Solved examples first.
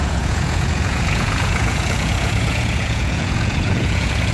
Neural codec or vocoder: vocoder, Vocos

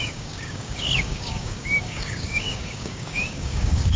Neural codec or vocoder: codec, DAC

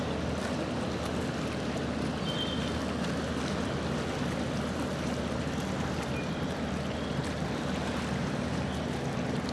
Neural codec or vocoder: none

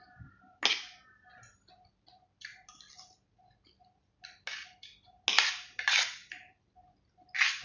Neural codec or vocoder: none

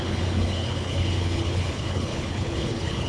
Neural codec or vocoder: codec, HILCodec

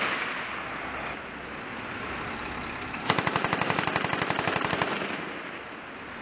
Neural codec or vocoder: none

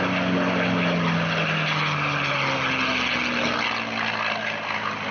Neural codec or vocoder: none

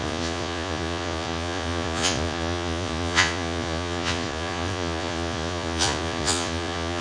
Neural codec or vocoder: vocoder, Vocos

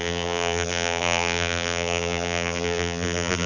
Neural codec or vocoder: vocoder, BigVGAN v2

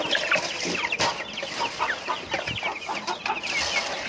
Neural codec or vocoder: none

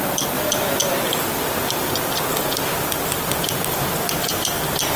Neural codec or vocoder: none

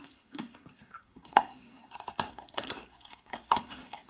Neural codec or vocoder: codec, SNAC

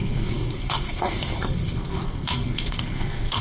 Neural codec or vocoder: codec, SNAC